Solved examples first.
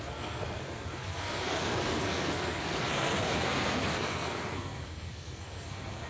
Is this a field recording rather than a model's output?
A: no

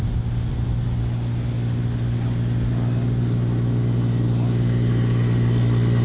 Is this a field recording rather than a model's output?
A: yes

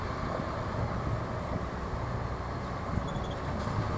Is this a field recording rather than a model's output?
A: yes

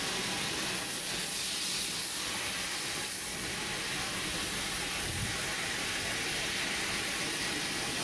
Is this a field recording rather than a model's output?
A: yes